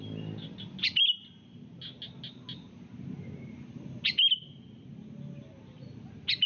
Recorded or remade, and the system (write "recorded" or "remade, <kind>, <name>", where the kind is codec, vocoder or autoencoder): recorded